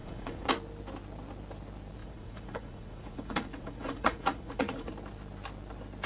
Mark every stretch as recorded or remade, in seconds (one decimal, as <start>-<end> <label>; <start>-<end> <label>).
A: 0.0-0.5 remade; 0.5-2.0 recorded; 2.0-4.9 remade; 4.9-6.1 recorded